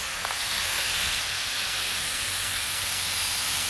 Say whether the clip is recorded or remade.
remade